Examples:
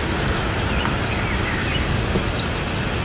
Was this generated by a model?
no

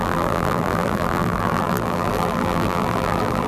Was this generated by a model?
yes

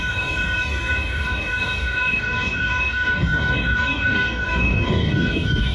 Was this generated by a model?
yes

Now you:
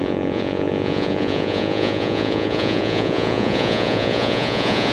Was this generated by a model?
yes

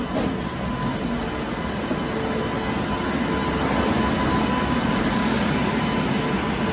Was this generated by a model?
no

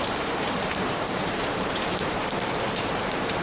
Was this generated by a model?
yes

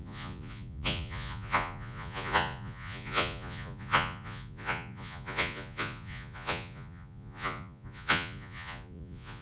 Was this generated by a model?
yes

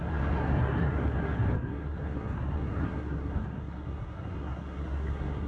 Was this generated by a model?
yes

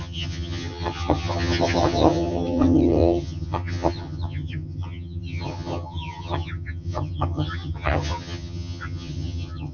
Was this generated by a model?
yes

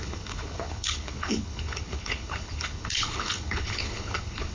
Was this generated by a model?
yes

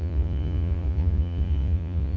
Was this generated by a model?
yes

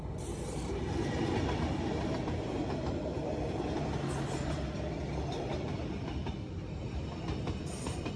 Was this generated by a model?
no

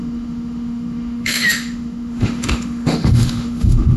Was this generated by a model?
yes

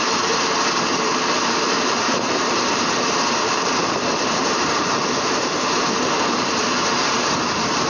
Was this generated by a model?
yes